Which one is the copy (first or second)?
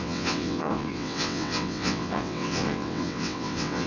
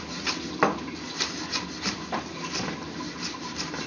first